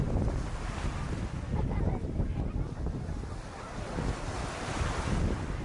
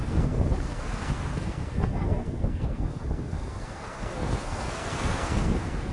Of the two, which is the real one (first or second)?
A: first